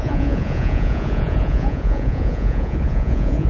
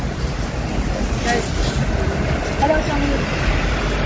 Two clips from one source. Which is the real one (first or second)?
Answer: second